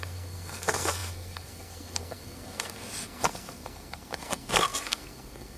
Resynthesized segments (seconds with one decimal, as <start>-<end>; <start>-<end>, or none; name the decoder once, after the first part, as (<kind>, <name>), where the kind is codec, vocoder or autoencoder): 0.0-5.6 (codec, SNAC)